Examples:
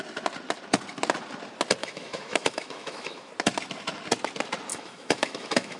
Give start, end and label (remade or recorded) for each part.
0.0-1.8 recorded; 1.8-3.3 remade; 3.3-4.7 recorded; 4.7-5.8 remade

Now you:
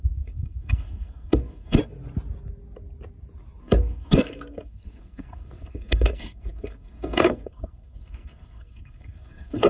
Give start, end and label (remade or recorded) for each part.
0.0-1.8 remade; 1.8-3.6 recorded; 3.6-9.7 remade

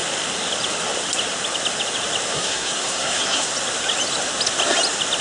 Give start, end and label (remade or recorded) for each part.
0.0-2.3 recorded; 2.3-3.5 remade; 3.5-5.2 recorded

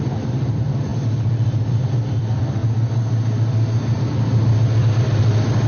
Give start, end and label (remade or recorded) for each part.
0.0-2.6 remade; 2.6-5.2 recorded; 5.2-5.7 remade

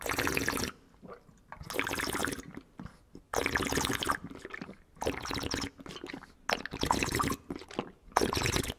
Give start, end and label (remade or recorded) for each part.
0.0-8.8 recorded

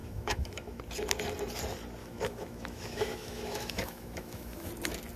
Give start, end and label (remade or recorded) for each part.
0.0-0.8 remade; 0.8-2.0 recorded; 2.0-4.7 remade; 4.7-5.2 recorded

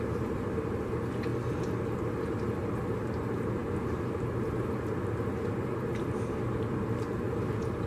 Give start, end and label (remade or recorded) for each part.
0.0-1.3 remade; 1.3-1.9 recorded; 1.9-7.9 remade